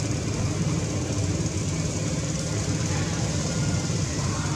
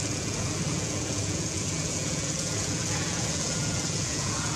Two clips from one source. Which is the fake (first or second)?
second